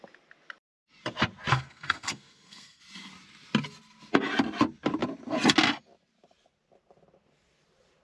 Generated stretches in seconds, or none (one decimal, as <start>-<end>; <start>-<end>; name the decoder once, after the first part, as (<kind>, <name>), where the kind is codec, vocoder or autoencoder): 1.5-2.8 (codec, SNAC)

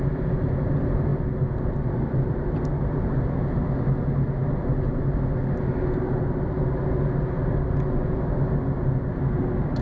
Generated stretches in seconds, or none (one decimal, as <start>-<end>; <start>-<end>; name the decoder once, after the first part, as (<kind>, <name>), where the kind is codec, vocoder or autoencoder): 1.1-2.7 (vocoder, BigVGAN v2)

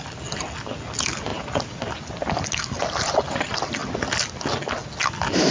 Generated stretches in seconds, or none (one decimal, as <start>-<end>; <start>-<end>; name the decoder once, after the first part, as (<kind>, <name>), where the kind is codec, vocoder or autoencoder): none

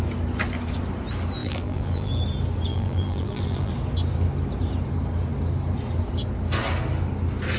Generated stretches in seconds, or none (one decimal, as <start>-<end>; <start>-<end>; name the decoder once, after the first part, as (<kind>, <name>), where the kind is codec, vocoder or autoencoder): 1.4-2.1 (vocoder, BigVGAN v2); 2.7-3.7